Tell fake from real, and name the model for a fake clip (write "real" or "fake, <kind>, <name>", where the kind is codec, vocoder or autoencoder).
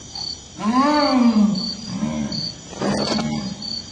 real